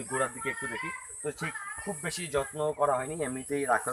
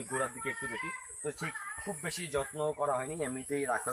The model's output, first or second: second